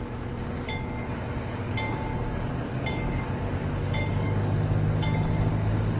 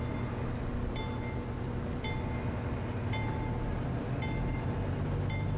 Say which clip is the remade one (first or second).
first